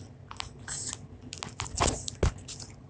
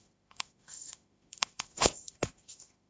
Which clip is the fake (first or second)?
second